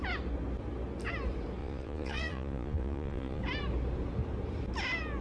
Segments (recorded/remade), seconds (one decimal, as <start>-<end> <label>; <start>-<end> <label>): 0.0-1.6 recorded; 1.6-3.4 remade; 3.4-5.2 recorded